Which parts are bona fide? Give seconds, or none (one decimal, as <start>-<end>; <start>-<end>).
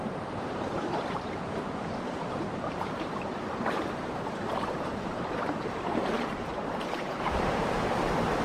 6.5-7.0